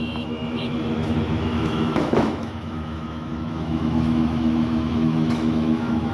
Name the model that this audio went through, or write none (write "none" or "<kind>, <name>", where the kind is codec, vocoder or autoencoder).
autoencoder, DAC-VAE